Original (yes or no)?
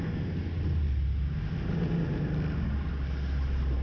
yes